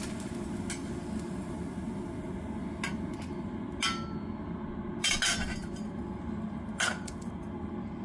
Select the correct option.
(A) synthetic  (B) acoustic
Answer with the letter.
B